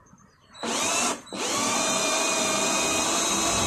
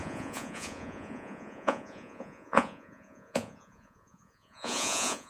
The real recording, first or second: first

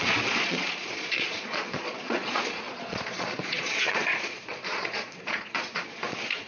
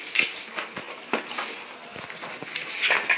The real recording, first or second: second